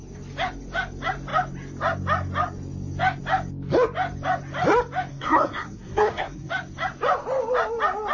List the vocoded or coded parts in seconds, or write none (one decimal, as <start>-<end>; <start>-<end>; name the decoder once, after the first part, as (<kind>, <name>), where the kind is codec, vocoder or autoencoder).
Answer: 5.1-6.5 (codec, SNAC)